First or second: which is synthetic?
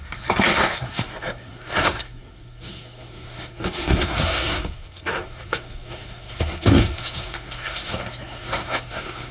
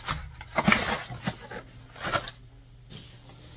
first